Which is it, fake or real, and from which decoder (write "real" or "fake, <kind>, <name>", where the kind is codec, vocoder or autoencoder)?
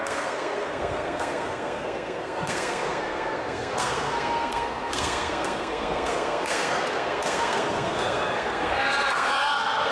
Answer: fake, codec, SNAC